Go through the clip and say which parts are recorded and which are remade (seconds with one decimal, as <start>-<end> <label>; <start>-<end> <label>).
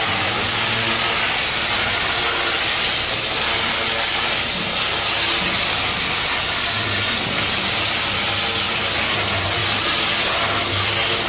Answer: 0.0-11.3 recorded